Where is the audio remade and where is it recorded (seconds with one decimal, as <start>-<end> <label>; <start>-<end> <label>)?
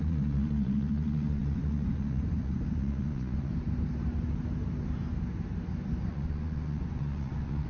0.0-3.5 remade; 3.5-6.1 recorded; 6.1-7.7 remade